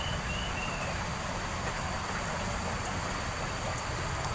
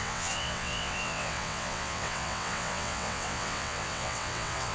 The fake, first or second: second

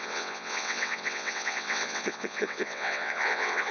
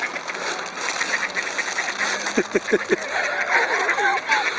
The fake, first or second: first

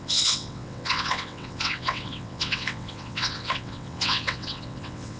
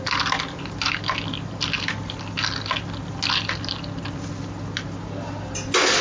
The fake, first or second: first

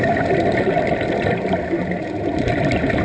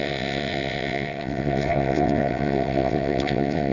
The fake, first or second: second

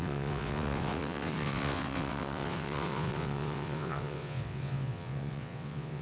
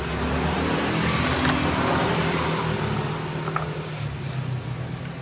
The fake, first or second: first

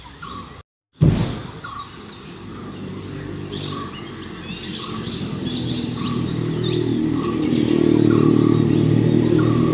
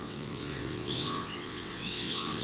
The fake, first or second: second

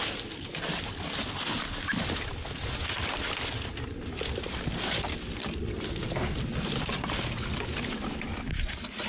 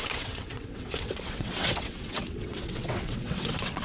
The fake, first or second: second